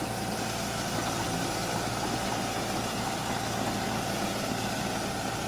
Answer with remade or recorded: recorded